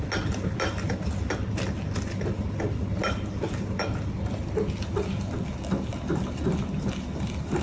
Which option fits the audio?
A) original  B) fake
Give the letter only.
A